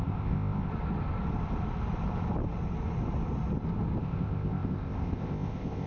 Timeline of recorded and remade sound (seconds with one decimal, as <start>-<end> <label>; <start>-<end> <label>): 0.0-0.7 remade; 0.7-4.0 recorded; 4.0-5.9 remade